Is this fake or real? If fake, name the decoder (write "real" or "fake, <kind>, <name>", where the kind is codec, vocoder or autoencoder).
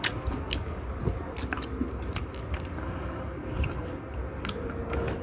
real